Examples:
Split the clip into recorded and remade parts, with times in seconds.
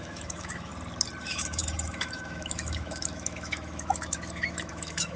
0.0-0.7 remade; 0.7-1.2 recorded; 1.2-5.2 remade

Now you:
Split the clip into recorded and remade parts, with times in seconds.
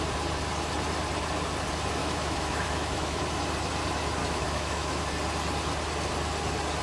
0.0-2.0 recorded; 2.0-3.2 remade; 3.2-4.2 recorded; 4.2-5.1 remade; 5.1-6.8 recorded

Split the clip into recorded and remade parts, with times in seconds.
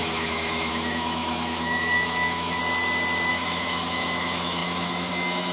0.0-2.6 remade; 2.6-3.3 recorded; 3.3-5.5 remade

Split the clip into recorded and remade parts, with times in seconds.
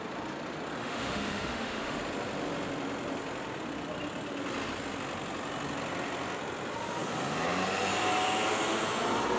0.0-0.8 recorded; 0.8-2.0 remade; 2.0-9.4 recorded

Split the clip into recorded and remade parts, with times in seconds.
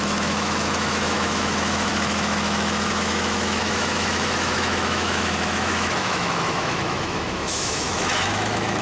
0.0-8.8 remade